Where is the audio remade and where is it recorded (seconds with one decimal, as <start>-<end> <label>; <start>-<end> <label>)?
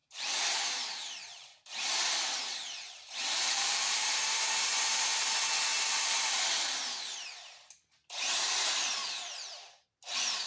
0.0-4.5 remade; 4.5-5.7 recorded; 5.7-6.3 remade; 6.3-10.5 recorded